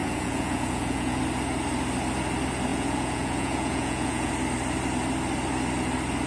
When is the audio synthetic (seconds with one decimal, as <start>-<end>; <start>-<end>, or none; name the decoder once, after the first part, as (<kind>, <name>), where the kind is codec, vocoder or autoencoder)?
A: 0.0-1.2 (vocoder, Vocos); 2.7-4.3